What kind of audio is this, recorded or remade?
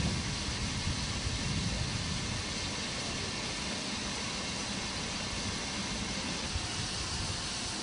recorded